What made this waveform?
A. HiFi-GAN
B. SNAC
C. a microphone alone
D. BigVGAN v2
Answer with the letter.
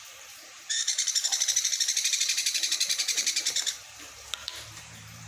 D